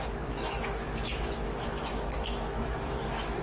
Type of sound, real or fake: fake